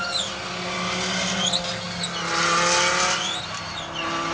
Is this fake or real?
real